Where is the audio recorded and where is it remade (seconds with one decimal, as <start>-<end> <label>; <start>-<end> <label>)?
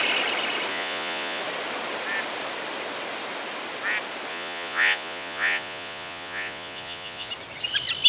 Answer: 0.0-0.7 recorded; 0.7-1.4 remade; 1.4-4.3 recorded; 4.3-7.3 remade; 7.3-8.1 recorded